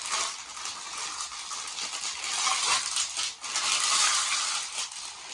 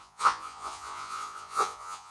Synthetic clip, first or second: second